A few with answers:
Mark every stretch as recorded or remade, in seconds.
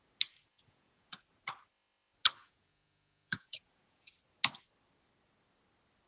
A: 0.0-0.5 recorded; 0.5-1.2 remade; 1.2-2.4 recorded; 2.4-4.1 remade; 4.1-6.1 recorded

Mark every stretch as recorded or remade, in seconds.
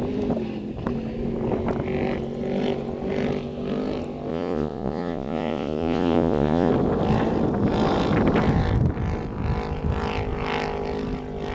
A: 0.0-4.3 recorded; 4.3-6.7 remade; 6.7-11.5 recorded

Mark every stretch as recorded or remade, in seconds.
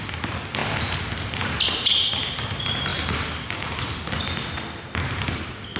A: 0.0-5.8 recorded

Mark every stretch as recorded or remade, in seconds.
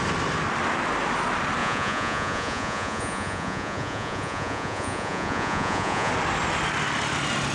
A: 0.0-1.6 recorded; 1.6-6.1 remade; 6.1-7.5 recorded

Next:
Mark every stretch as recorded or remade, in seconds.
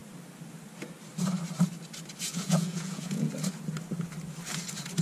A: 0.0-2.3 recorded; 2.3-3.3 remade; 3.3-5.0 recorded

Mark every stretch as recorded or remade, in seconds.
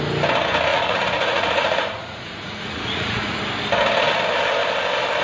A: 0.0-0.7 recorded; 0.7-3.4 remade; 3.4-5.2 recorded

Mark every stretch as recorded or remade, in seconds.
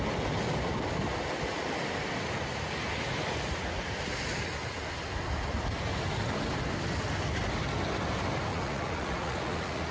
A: 0.0-8.5 recorded; 8.5-9.9 remade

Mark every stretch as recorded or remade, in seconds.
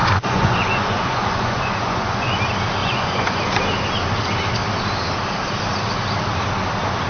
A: 0.0-2.4 remade; 2.4-2.8 recorded; 2.8-3.4 remade; 3.4-7.1 recorded